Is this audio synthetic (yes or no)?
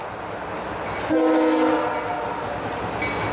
no